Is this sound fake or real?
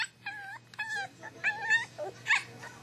real